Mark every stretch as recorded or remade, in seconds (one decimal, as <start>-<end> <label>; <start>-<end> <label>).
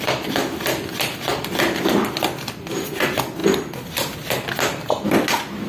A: 0.0-5.7 recorded